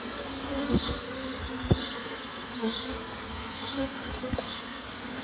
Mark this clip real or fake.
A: fake